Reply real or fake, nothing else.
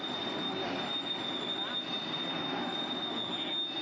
real